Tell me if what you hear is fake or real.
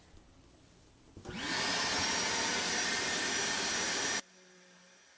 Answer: real